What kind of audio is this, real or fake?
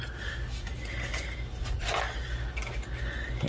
real